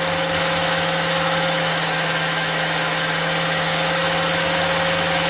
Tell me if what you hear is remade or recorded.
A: remade